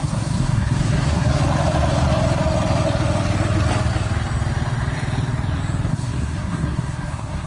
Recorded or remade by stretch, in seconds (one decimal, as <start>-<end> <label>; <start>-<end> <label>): 0.0-1.4 remade; 1.4-5.9 recorded; 5.9-7.5 remade